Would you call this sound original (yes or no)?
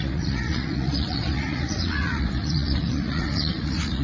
no